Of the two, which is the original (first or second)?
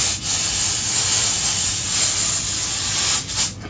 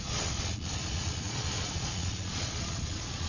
first